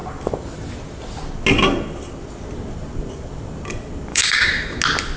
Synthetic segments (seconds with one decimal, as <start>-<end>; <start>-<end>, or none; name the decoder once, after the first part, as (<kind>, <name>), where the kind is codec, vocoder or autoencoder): 4.1-4.8 (codec, DAC)